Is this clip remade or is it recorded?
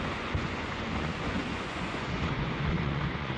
remade